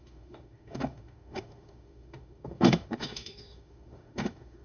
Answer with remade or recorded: remade